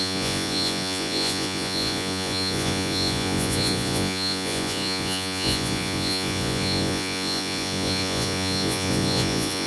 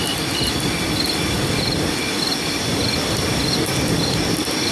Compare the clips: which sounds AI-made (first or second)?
first